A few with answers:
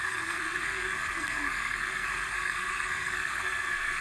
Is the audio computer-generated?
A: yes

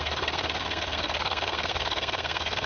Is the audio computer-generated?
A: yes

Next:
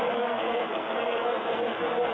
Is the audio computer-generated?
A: yes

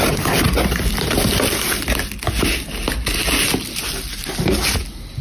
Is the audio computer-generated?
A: no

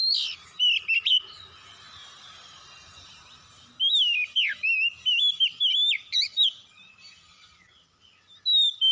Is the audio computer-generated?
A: no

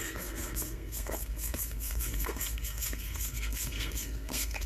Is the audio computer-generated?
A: yes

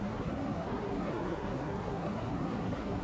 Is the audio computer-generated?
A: yes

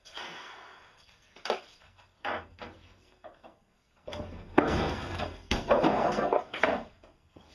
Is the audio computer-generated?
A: yes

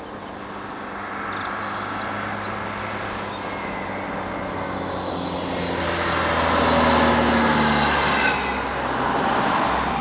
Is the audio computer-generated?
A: no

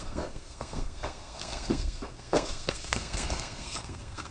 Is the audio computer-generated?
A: yes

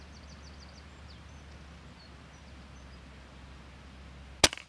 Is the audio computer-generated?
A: no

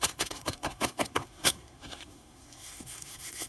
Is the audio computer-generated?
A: yes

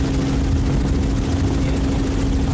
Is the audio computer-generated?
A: no